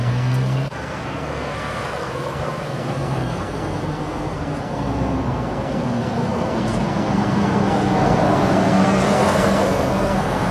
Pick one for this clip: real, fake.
fake